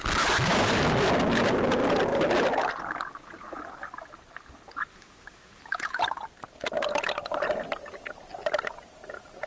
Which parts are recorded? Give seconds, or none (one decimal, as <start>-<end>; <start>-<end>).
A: 0.0-4.9; 6.0-9.5